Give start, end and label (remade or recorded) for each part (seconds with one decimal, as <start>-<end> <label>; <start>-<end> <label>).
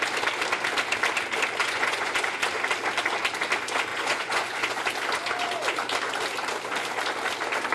0.0-1.6 recorded; 1.6-2.2 remade; 2.2-3.9 recorded; 3.9-4.8 remade; 4.8-7.7 recorded